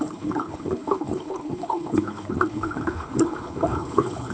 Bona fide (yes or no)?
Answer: no